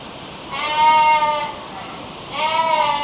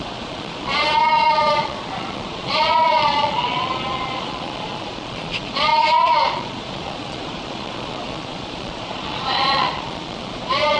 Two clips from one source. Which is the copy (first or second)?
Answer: second